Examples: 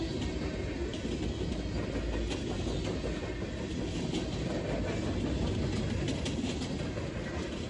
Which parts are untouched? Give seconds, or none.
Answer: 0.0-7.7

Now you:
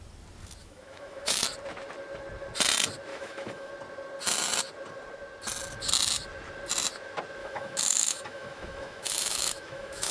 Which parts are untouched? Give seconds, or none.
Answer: 0.0-0.6; 1.4-3.1; 3.7-7.4